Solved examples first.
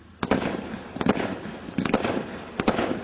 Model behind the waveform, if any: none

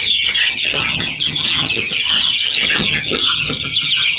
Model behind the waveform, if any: vocoder, HiFi-GAN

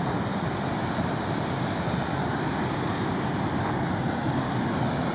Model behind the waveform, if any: none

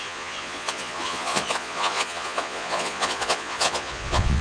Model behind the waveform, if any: vocoder, Vocos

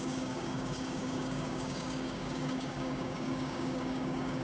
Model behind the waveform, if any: codec, DAC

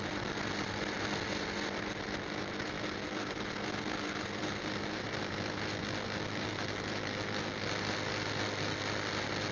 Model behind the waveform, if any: none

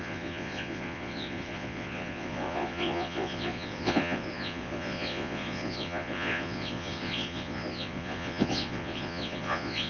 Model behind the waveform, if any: vocoder, Vocos